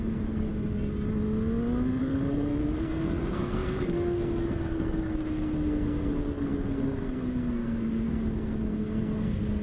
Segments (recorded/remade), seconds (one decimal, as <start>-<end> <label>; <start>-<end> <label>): 0.0-0.5 remade; 0.5-2.0 recorded; 2.0-9.6 remade